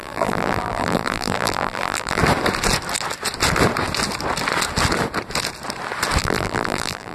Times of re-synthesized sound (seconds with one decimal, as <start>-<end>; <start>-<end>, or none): 0.0-2.2; 6.2-7.1